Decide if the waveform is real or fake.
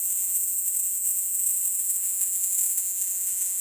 fake